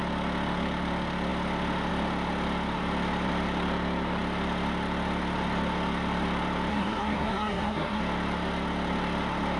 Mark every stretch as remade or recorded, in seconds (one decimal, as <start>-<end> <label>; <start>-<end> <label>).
0.0-6.7 recorded; 6.7-8.0 remade; 8.0-9.6 recorded